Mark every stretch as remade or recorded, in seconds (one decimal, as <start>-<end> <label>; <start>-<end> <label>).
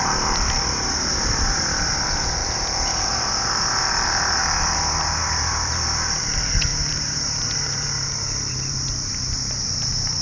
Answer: 0.0-10.2 remade